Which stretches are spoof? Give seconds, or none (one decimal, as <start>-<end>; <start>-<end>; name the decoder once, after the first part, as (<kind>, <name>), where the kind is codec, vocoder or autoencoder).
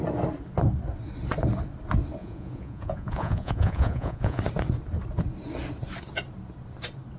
2.2-4.4 (vocoder, Vocos)